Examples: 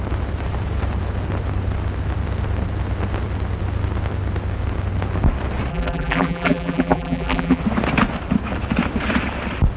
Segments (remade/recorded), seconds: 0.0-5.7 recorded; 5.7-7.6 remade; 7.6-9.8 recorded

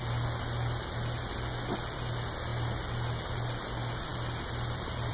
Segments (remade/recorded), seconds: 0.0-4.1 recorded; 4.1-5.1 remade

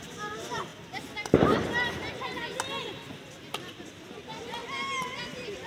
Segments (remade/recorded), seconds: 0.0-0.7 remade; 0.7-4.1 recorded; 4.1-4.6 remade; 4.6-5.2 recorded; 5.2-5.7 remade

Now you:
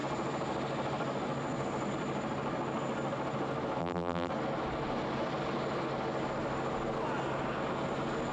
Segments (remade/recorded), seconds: 0.0-3.8 recorded; 3.8-4.3 remade; 4.3-8.3 recorded